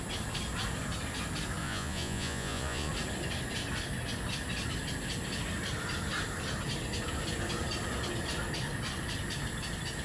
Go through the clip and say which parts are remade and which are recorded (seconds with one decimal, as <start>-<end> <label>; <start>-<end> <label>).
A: 0.0-1.6 recorded; 1.6-2.9 remade; 2.9-10.0 recorded